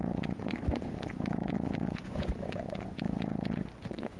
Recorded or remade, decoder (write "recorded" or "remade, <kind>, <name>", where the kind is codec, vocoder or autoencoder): remade, vocoder, Vocos